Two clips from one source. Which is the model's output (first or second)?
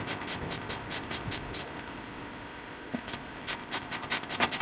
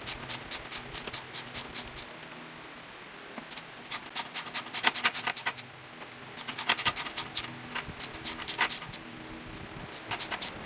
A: first